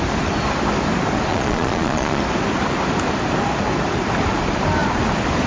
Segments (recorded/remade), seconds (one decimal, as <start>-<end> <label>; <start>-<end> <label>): 0.0-1.3 recorded; 1.3-2.2 remade; 2.2-5.5 recorded